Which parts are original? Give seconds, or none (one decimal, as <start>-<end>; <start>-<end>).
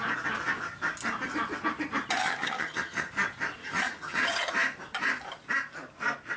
0.0-2.2; 3.1-3.6; 4.5-6.4